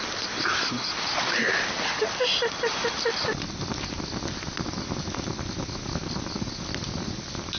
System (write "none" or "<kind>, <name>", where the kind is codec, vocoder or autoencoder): none